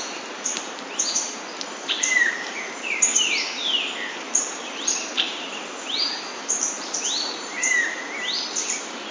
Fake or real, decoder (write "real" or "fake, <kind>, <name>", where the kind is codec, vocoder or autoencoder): fake, vocoder, BigVGAN v2